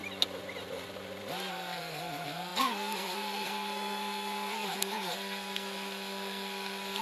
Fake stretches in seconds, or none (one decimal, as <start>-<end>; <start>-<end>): 1.5-7.0